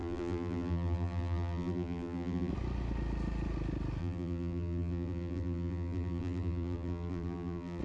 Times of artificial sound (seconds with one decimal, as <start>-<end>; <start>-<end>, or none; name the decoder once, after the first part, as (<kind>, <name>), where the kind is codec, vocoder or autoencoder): 0.0-2.5 (vocoder, BigVGAN v2); 4.0-7.8